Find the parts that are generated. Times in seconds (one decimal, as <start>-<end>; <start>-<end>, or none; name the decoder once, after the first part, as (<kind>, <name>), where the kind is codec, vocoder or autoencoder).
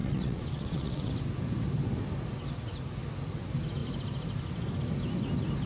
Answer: 0.0-1.1 (vocoder, WaveNeXt)